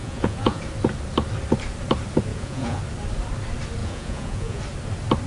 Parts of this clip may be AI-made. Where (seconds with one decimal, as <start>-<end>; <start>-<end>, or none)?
0.0-0.6; 2.3-2.8; 3.8-4.6